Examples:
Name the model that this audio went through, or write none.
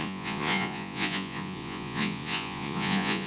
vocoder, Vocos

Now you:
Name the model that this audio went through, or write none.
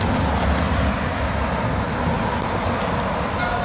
none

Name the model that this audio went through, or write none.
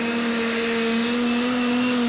none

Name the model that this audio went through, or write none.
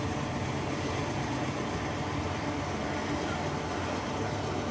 none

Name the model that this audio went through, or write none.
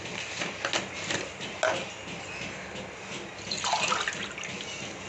none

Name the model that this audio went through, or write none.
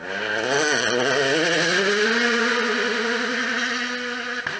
none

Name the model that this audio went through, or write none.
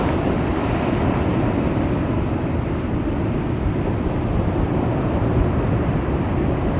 none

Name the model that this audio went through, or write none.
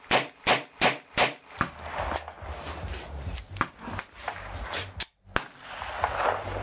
none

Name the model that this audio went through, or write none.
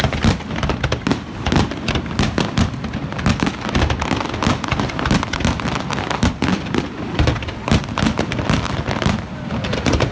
none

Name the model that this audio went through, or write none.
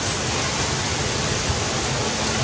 none